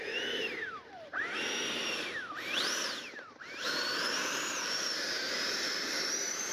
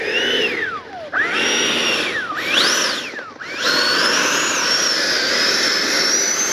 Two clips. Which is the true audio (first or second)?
second